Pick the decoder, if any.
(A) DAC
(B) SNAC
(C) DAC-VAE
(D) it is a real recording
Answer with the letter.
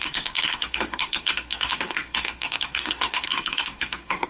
B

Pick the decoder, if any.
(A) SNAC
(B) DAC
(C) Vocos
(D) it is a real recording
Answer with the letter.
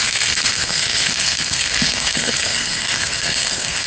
A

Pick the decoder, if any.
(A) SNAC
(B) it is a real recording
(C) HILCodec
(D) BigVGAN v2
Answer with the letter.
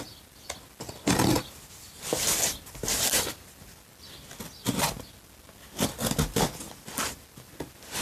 B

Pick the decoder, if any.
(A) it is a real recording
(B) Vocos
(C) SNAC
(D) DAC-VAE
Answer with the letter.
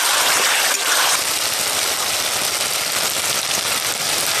A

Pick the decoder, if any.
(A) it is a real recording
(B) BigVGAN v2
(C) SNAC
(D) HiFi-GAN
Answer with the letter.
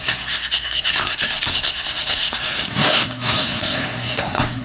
C